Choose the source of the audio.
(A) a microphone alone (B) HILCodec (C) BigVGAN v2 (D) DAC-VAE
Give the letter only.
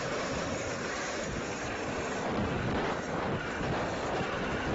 A